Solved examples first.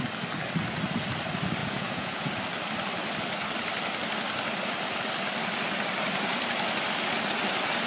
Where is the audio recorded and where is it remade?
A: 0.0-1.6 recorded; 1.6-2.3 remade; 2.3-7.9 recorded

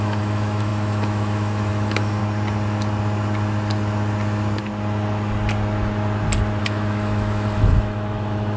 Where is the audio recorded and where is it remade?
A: 0.0-2.2 remade; 2.2-6.6 recorded; 6.6-8.6 remade

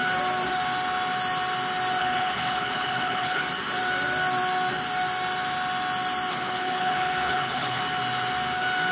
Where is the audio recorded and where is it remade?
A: 0.0-2.0 recorded; 2.0-3.4 remade; 3.4-6.3 recorded; 6.3-7.8 remade; 7.8-8.9 recorded